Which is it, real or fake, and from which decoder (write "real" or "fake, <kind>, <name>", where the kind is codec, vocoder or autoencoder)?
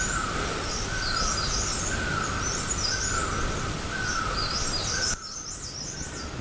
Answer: real